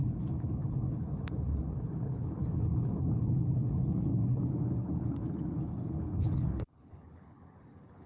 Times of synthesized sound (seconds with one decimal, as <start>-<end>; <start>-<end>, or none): 0.0-8.1